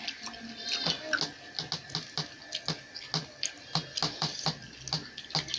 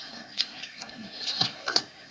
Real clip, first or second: first